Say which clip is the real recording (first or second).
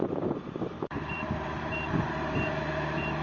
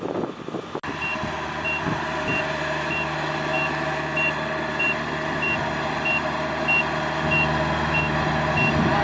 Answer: second